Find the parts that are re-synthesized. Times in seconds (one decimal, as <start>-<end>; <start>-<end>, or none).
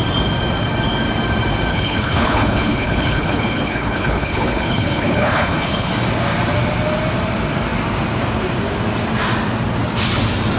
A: 1.7-5.9